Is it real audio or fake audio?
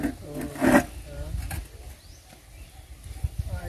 real